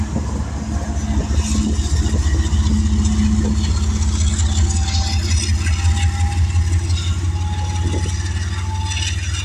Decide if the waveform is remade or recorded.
recorded